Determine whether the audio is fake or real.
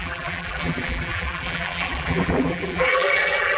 fake